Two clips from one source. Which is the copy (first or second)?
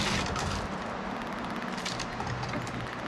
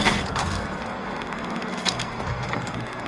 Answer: second